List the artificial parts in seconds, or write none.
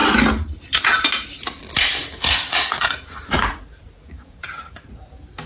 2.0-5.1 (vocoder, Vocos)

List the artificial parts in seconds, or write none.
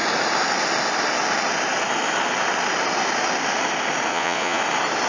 4.1-4.6 (vocoder, Vocos)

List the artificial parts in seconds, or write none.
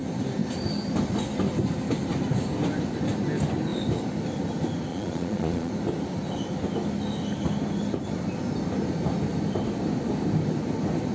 4.9-5.7 (vocoder, Vocos)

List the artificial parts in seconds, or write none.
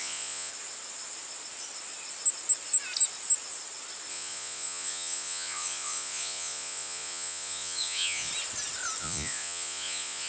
0.0-0.5 (vocoder, Vocos); 4.1-8.3; 9.0-10.3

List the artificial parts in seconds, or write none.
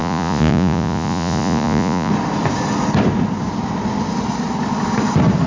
0.0-2.1 (vocoder, Vocos)